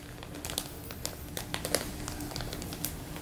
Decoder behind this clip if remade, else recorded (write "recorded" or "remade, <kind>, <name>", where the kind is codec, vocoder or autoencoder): recorded